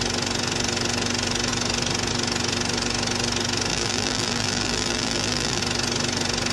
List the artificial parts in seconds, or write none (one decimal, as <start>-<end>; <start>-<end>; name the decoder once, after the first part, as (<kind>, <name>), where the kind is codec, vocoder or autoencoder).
3.7-5.6 (vocoder, BigVGAN v2)